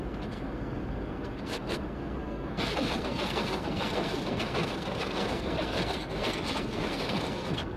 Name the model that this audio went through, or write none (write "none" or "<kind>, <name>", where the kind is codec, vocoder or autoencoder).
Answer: codec, SNAC